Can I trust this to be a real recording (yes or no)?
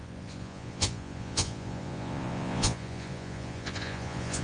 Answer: no